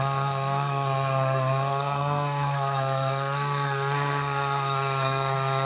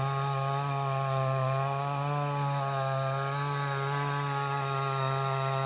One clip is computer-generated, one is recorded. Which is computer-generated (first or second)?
first